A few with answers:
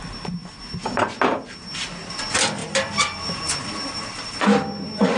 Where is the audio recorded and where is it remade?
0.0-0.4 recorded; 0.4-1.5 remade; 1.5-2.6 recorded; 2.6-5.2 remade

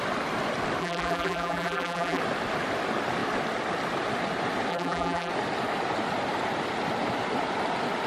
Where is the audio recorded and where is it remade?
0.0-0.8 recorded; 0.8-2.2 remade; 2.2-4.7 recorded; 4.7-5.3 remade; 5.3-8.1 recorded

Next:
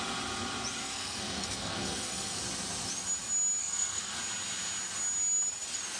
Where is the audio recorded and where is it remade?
0.0-0.8 recorded; 0.8-2.4 remade; 2.4-3.6 recorded; 3.6-4.1 remade; 4.1-6.0 recorded